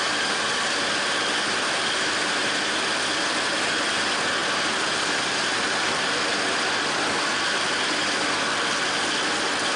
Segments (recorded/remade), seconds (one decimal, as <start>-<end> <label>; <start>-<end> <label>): 0.0-9.8 recorded